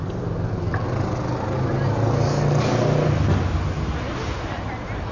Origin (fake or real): real